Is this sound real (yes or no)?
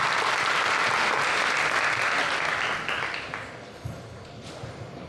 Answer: yes